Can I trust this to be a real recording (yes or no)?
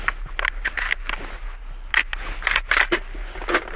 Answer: yes